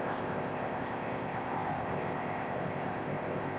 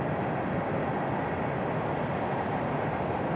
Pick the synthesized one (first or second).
first